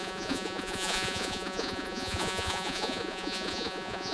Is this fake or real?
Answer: fake